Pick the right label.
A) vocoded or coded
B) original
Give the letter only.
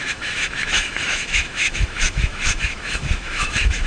A